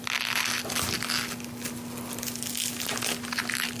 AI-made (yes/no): no